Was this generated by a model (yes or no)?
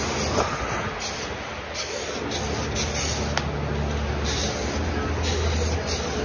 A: no